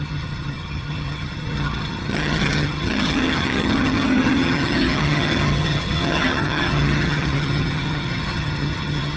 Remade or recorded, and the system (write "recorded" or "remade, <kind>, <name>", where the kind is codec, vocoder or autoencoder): remade, vocoder, HiFi-GAN